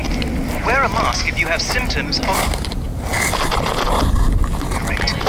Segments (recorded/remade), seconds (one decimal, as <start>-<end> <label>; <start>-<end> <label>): 0.0-5.3 recorded